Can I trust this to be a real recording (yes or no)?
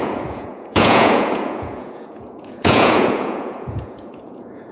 no